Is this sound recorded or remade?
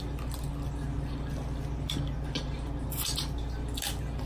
recorded